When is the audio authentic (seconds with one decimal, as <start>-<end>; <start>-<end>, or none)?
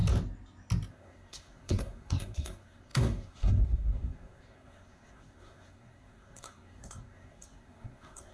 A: 0.0-0.9